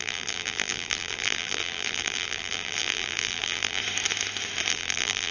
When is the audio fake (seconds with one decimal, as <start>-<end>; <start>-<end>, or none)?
0.0-3.8; 4.7-5.3

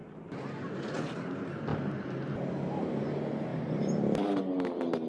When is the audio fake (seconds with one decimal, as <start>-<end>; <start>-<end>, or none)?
3.5-4.4

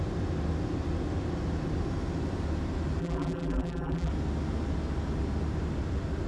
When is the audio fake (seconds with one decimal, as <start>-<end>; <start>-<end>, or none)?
3.0-4.1

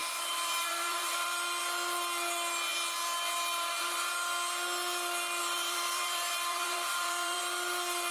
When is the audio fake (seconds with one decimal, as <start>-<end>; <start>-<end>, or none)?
0.0-1.6; 5.4-7.4

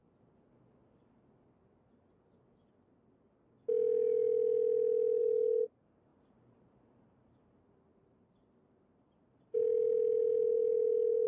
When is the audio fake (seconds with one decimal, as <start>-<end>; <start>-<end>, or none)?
5.2-11.3

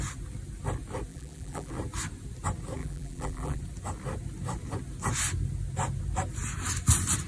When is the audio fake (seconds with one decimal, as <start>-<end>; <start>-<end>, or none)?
1.1-1.7; 2.8-3.6

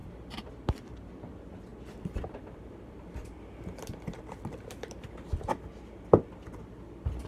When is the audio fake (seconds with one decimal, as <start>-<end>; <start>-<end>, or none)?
0.0-0.5; 1.7-5.7